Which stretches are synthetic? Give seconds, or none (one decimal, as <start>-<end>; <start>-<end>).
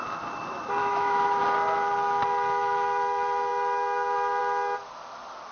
0.8-1.4